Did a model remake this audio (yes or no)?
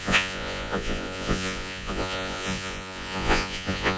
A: yes